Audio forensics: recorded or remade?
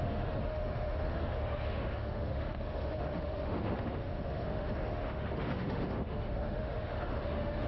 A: remade